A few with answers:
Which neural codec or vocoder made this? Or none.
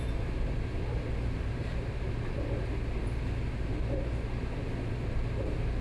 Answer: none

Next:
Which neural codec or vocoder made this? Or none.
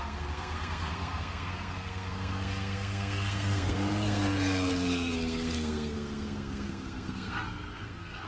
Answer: codec, SNAC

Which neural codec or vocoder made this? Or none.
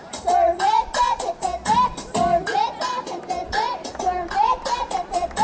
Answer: none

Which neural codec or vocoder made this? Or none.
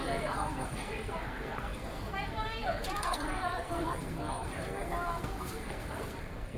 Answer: codec, SNAC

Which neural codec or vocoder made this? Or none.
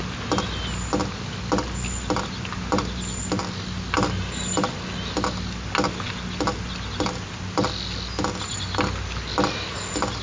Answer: none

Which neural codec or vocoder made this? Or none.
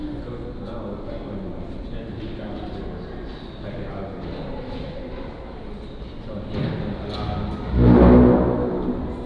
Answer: none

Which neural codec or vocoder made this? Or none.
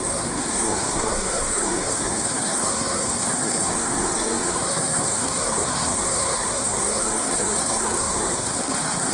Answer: codec, SNAC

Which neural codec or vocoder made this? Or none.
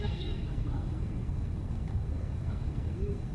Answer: codec, SNAC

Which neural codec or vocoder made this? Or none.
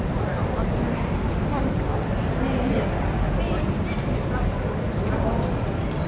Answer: none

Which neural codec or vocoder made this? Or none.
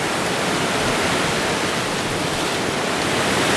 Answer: none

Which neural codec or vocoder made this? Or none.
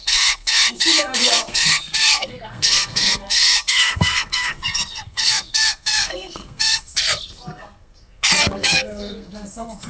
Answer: codec, SNAC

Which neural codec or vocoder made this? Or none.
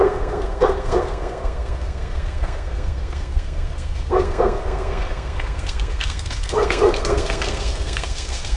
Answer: codec, SNAC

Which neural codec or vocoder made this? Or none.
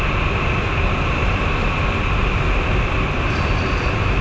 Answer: none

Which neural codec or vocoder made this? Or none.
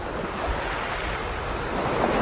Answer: none